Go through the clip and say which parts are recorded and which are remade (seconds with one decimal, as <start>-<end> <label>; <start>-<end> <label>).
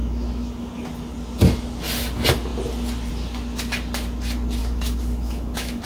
0.0-0.7 remade; 0.7-4.6 recorded; 4.6-5.8 remade